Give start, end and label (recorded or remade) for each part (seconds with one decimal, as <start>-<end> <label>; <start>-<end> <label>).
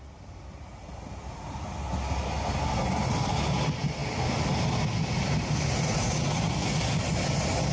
0.0-7.7 recorded